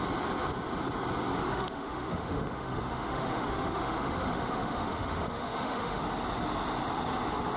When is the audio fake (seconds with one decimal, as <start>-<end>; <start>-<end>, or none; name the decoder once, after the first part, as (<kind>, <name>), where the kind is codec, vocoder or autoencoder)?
1.4-6.0 (autoencoder, DAC-VAE)